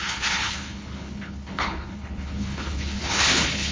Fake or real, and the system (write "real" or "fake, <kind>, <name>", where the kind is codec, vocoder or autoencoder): fake, codec, HILCodec